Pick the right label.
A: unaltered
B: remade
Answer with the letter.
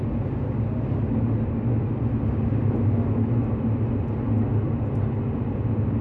A